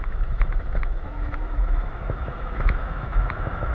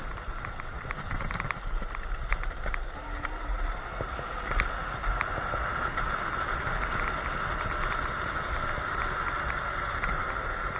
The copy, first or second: first